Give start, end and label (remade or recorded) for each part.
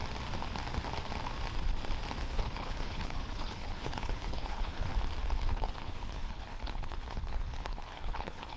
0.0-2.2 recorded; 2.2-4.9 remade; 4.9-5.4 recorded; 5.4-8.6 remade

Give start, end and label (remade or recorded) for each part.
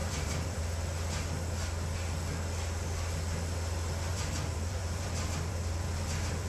0.0-0.6 remade; 0.6-4.1 recorded; 4.1-6.5 remade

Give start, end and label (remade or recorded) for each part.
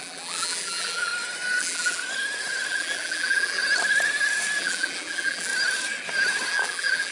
0.0-1.1 remade; 1.1-1.6 recorded; 1.6-2.0 remade; 2.0-2.7 recorded; 2.7-3.6 remade; 3.6-4.6 recorded; 4.6-5.5 remade; 5.5-6.5 recorded; 6.5-7.1 remade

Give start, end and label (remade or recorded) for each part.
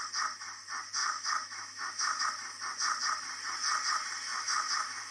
0.0-1.0 recorded; 1.0-2.2 remade; 2.2-4.3 recorded; 4.3-5.1 remade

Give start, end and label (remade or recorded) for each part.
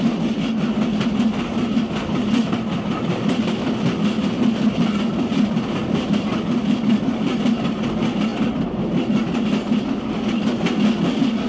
0.0-11.5 recorded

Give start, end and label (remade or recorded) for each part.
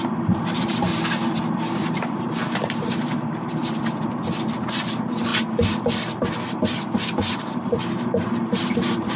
0.0-0.9 remade; 0.9-1.5 recorded; 1.5-3.6 remade; 3.6-4.6 recorded; 4.6-5.3 remade; 5.3-6.8 recorded; 6.8-9.2 remade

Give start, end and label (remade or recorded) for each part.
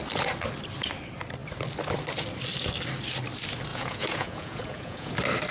0.0-3.7 recorded; 3.7-5.1 remade; 5.1-5.5 recorded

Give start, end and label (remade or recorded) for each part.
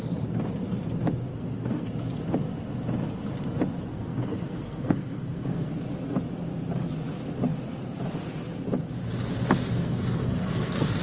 0.0-1.3 recorded; 1.3-1.9 remade; 1.9-3.9 recorded; 3.9-5.7 remade; 5.7-9.8 recorded; 9.8-11.0 remade